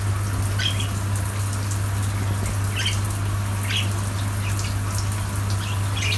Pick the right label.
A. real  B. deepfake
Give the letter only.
A